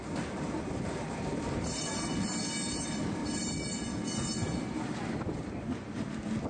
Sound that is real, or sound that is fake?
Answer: real